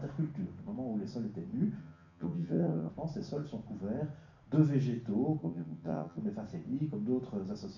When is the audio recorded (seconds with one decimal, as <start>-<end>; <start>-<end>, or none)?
0.0-1.8; 2.9-5.4; 6.2-7.8